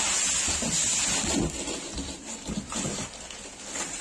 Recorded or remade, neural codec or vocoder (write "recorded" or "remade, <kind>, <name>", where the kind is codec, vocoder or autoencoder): recorded